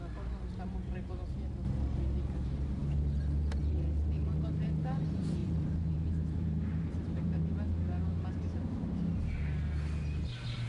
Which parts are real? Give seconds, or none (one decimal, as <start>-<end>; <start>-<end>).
0.0-5.4; 7.4-10.7